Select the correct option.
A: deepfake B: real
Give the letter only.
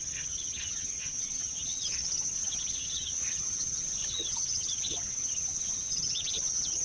A